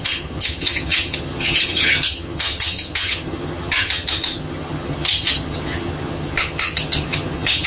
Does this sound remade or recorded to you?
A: remade